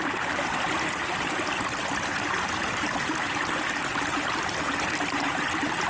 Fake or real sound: real